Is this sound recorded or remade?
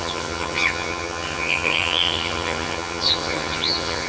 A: remade